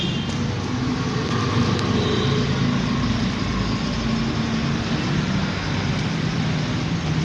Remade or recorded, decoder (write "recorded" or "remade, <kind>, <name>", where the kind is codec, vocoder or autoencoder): recorded